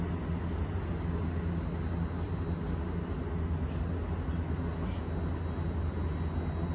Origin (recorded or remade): recorded